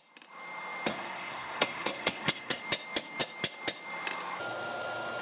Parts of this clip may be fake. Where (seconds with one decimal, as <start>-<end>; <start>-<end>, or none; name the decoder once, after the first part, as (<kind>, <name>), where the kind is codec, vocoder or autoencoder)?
0.9-2.6 (codec, SNAC)